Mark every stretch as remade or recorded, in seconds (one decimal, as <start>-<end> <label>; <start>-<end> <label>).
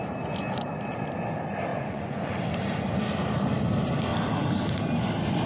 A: 0.0-1.7 recorded; 1.7-2.4 remade; 2.4-5.5 recorded